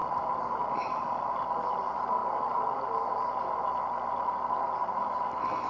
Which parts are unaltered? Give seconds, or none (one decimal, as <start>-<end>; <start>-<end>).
0.0-5.7